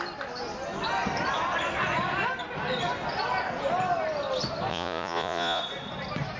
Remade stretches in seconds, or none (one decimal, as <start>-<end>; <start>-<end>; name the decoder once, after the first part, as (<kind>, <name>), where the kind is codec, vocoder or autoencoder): 4.7-5.6 (vocoder, Vocos)